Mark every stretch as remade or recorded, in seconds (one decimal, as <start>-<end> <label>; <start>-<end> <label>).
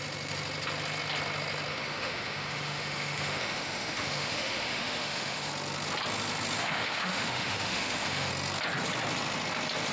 0.0-1.7 recorded; 1.7-5.5 remade; 5.5-6.6 recorded; 6.6-8.3 remade; 8.3-9.9 recorded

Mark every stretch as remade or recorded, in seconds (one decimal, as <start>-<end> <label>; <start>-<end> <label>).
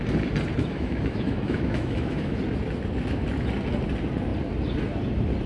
0.0-0.7 recorded; 0.7-2.4 remade; 2.4-5.5 recorded